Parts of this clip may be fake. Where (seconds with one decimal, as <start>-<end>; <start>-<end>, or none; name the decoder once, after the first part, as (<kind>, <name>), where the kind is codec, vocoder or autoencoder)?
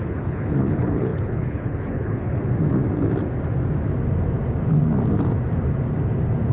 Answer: 0.0-2.4 (codec, HILCodec)